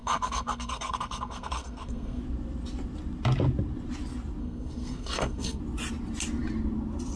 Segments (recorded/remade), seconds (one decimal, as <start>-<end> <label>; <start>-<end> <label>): 0.0-2.2 remade; 2.2-4.4 recorded; 4.4-5.6 remade; 5.6-7.2 recorded

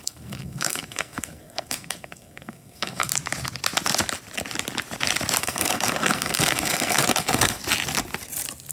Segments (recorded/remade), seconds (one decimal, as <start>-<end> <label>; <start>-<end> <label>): 0.0-3.1 remade; 3.1-5.4 recorded; 5.4-7.6 remade; 7.6-8.7 recorded